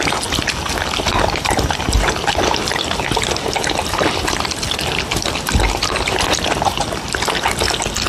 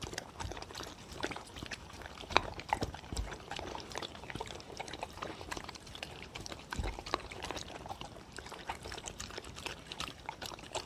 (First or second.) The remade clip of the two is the second